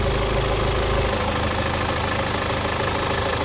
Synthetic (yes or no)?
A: no